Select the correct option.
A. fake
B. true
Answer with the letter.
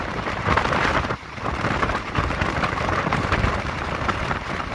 A